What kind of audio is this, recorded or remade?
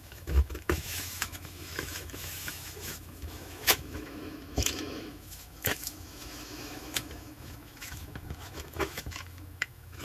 remade